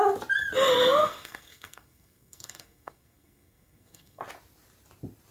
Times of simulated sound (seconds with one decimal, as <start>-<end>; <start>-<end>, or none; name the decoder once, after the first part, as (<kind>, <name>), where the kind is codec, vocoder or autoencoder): 1.0-4.2 (codec, SNAC)